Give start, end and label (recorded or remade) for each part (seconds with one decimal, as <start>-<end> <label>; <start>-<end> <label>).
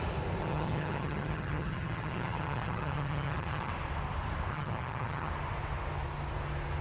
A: 0.0-0.4 recorded; 0.4-3.7 remade; 3.7-4.5 recorded; 4.5-5.3 remade; 5.3-6.8 recorded